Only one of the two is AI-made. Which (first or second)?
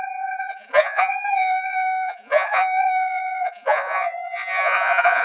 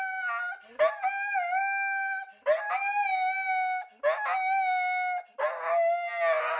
first